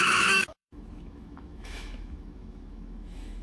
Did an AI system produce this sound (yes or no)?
yes